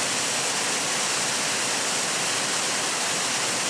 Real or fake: real